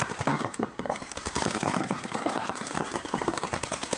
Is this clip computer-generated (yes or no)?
yes